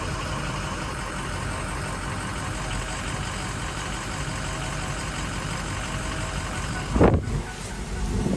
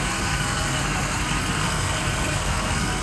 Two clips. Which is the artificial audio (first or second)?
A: second